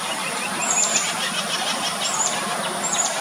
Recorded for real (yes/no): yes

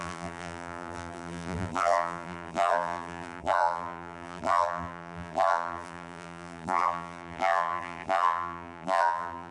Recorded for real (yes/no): no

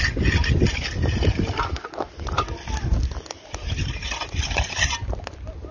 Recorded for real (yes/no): yes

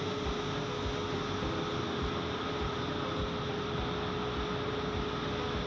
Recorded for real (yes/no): yes